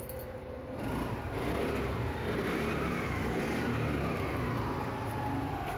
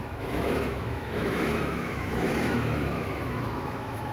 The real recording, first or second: first